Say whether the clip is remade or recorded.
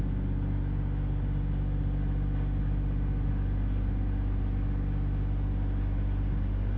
recorded